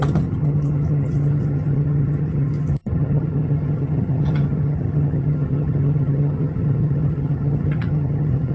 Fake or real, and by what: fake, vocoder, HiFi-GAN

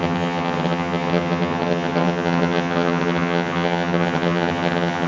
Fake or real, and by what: fake, vocoder, HiFi-GAN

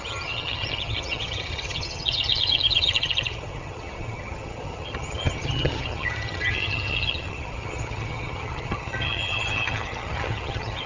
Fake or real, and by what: fake, vocoder, HiFi-GAN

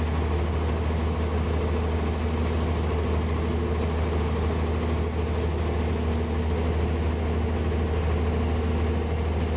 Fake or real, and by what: real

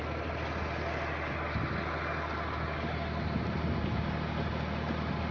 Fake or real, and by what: real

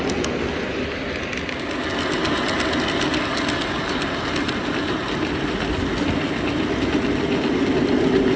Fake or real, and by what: real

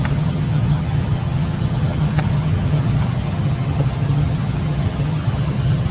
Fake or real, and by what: fake, vocoder, HiFi-GAN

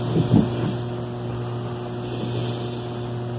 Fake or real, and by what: real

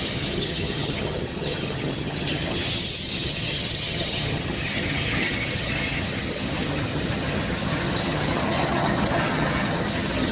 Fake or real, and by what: fake, vocoder, HiFi-GAN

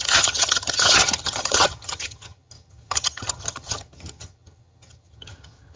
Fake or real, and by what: fake, vocoder, HiFi-GAN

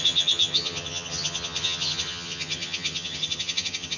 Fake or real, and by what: fake, vocoder, HiFi-GAN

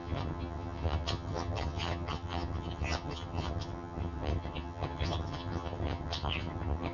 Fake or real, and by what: fake, vocoder, HiFi-GAN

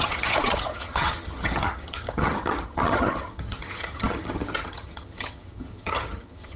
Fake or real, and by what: fake, vocoder, HiFi-GAN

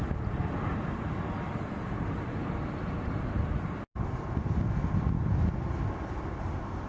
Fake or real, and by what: real